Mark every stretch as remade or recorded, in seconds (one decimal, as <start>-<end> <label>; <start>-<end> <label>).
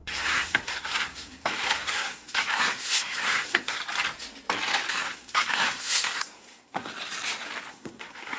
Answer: 0.0-3.8 remade; 3.8-4.9 recorded; 4.9-6.9 remade; 6.9-7.7 recorded; 7.7-8.4 remade